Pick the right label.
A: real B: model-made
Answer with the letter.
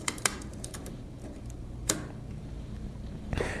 B